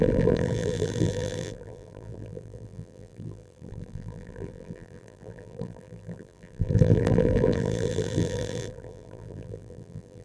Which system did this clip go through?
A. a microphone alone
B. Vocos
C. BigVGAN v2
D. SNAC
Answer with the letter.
C